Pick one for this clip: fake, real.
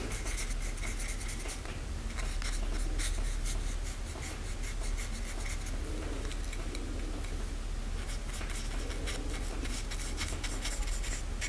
real